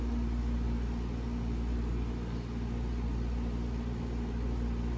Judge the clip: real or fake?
real